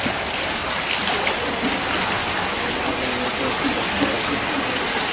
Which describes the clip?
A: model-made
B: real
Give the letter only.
B